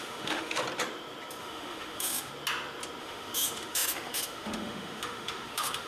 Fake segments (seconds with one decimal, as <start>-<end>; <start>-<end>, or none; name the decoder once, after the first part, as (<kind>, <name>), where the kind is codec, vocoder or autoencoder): 0.0-0.6 (autoencoder, DAC-VAE); 1.4-2.3; 3.0-5.9